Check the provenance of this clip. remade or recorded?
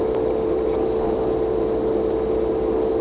recorded